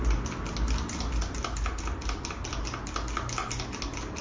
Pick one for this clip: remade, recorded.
recorded